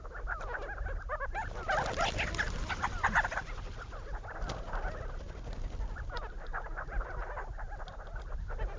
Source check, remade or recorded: recorded